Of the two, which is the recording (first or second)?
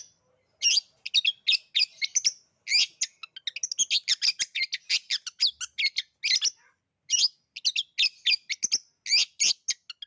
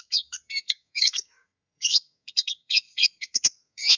first